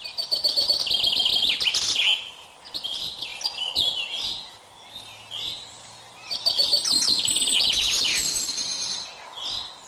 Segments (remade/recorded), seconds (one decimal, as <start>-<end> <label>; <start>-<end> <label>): 0.0-9.9 recorded